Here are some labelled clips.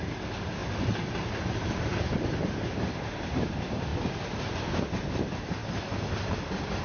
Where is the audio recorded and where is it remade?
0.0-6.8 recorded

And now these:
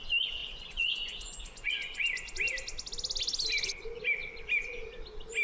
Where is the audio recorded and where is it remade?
0.0-0.4 recorded; 0.4-2.3 remade; 2.3-5.4 recorded